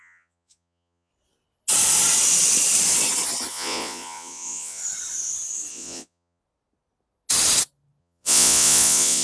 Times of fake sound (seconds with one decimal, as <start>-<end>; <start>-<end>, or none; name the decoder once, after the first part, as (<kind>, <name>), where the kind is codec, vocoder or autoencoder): 0.0-1.1 (vocoder, Vocos); 3.5-4.8; 5.7-6.4; 8.0-9.2